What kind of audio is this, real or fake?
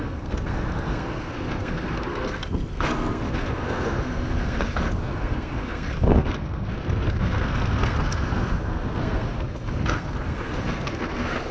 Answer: fake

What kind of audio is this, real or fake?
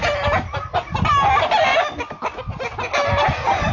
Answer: real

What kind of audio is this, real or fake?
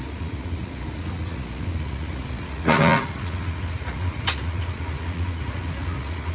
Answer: fake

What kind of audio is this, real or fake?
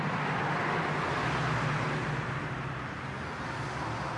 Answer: real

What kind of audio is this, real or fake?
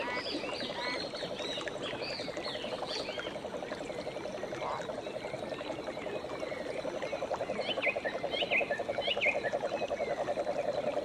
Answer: real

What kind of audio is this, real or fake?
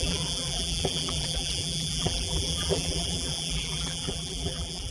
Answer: fake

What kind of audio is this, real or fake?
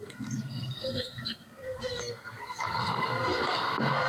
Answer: fake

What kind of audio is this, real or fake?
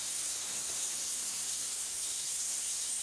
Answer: fake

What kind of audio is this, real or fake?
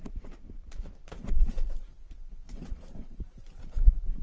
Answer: fake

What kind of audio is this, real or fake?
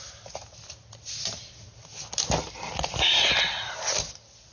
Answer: real